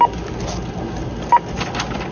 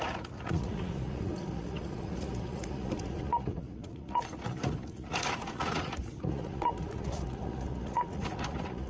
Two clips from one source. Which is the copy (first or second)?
second